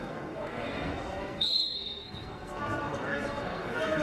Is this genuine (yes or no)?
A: no